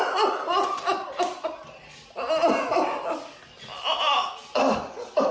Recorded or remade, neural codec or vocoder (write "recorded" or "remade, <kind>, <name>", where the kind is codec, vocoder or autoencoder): recorded